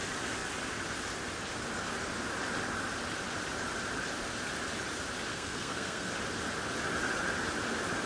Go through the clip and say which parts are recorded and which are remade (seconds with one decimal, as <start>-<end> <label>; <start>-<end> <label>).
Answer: 0.0-5.3 recorded; 5.3-6.1 remade; 6.1-8.1 recorded